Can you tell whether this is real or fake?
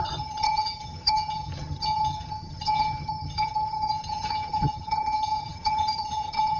fake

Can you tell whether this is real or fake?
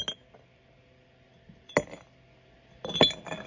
real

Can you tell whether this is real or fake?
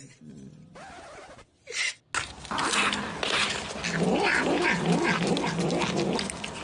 real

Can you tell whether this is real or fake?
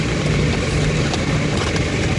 real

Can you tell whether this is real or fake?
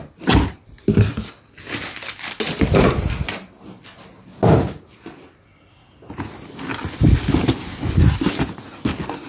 real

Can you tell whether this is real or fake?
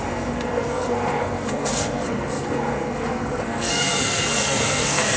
fake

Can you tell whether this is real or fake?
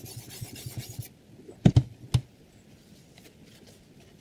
real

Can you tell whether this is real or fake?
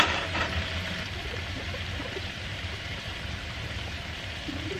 fake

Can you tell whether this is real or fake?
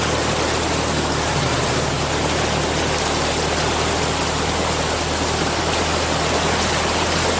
real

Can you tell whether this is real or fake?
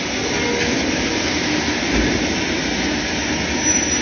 real